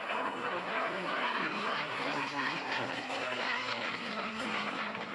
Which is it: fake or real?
fake